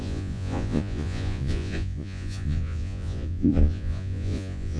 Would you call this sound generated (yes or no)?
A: yes